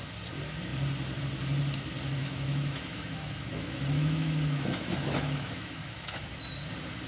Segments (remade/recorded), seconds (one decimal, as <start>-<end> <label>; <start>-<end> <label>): 0.0-2.2 recorded; 2.2-6.4 remade; 6.4-7.1 recorded